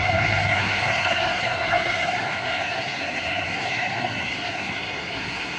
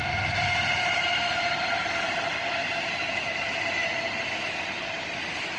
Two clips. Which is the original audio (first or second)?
second